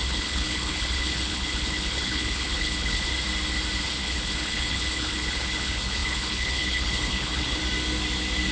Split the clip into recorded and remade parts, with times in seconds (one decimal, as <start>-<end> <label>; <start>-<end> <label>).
0.0-3.1 remade; 3.1-3.8 recorded; 3.8-7.6 remade; 7.6-8.5 recorded